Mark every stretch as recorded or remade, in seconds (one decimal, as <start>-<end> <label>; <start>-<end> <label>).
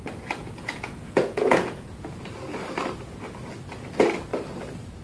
0.0-0.4 recorded; 0.4-2.2 remade; 2.2-5.0 recorded